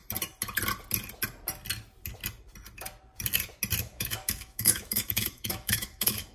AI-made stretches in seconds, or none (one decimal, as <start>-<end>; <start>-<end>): 3.8-6.3